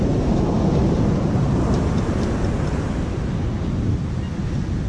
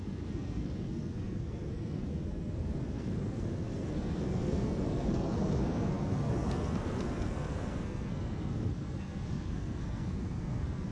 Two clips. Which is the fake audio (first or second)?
second